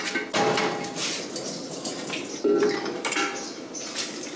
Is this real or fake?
real